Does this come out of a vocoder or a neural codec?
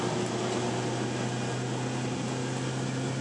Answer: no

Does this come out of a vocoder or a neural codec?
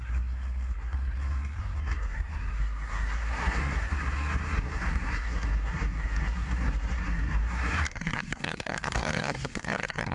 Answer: yes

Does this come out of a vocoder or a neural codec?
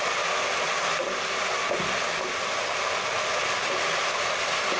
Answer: no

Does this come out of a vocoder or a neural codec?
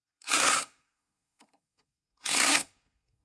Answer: yes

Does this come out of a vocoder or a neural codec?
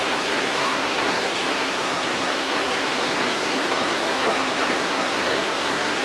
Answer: yes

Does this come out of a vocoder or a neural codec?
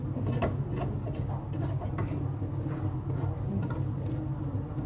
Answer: no